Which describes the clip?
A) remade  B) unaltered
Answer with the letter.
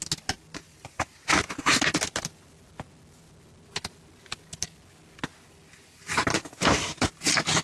B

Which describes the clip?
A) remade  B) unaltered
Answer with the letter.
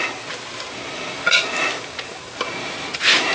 B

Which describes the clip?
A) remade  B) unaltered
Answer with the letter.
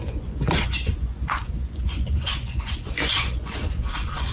A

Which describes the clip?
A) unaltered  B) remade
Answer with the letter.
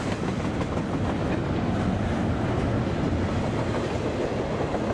A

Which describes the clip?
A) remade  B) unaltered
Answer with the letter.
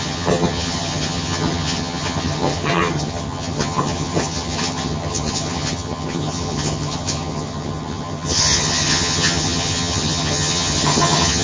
A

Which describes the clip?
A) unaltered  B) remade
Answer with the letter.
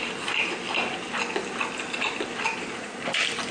A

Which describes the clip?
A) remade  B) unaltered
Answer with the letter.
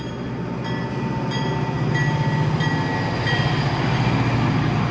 B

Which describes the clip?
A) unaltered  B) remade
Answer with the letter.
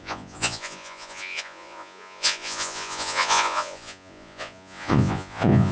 B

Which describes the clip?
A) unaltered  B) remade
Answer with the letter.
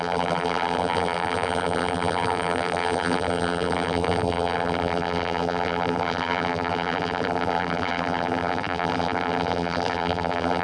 B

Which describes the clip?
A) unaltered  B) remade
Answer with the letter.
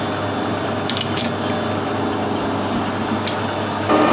A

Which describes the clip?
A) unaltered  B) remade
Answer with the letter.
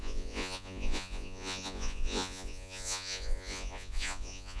B